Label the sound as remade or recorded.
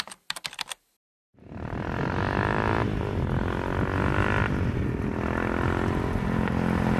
recorded